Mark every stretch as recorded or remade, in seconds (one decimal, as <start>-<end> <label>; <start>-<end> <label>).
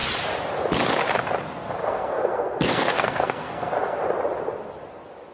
0.0-1.8 recorded; 1.8-4.0 remade; 4.0-5.3 recorded